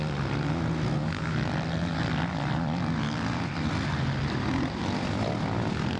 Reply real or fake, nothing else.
real